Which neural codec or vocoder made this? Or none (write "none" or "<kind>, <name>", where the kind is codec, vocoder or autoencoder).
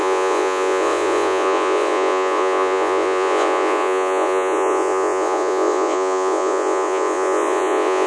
vocoder, Vocos